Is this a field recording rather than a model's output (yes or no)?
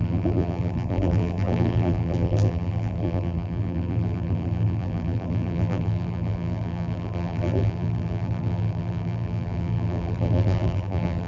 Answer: no